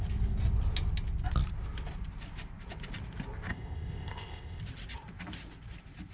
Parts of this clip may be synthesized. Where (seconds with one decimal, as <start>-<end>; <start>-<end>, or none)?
3.5-4.6